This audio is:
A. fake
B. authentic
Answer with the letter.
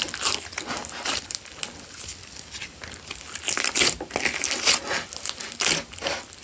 B